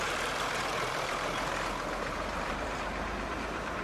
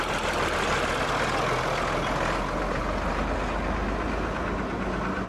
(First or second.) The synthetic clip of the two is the first